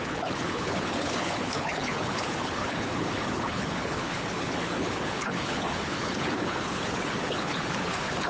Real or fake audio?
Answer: fake